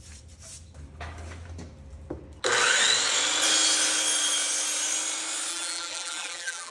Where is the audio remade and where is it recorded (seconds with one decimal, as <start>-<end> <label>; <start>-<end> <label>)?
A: 0.0-5.5 recorded; 5.5-6.7 remade